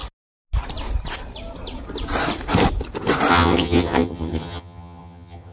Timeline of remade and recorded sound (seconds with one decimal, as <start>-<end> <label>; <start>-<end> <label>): 0.0-3.3 recorded; 3.3-5.5 remade